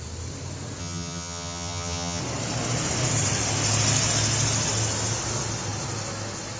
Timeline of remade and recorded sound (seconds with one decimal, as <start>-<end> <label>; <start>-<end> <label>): 0.0-0.8 recorded; 0.8-2.2 remade; 2.2-6.6 recorded